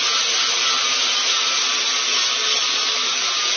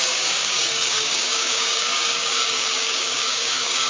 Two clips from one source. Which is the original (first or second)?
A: first